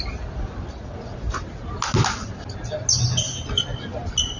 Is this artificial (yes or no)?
no